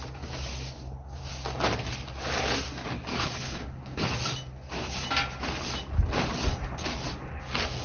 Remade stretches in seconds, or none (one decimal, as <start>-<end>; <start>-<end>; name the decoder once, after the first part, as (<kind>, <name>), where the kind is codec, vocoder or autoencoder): 3.1-4.1 (codec, HILCodec)